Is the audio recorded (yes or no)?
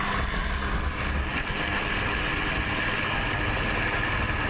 yes